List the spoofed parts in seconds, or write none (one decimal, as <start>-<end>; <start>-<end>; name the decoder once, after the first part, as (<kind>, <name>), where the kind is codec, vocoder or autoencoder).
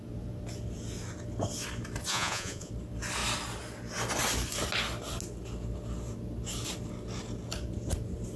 2.1-2.7 (vocoder, Vocos)